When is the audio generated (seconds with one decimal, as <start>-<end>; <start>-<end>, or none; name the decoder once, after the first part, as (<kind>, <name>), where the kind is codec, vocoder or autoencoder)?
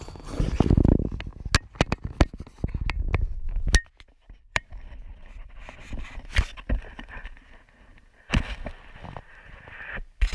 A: 4.5-5.9 (vocoder, BigVGAN v2); 7.9-9.5